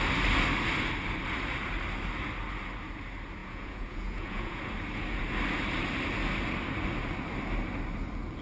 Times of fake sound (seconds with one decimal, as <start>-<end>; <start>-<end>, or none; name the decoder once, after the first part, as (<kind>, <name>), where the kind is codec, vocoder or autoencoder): 3.4-4.6 (vocoder, Vocos)